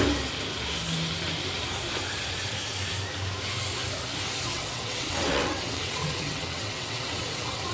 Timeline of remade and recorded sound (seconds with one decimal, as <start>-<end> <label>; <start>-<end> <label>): 0.0-4.5 recorded; 4.5-7.7 remade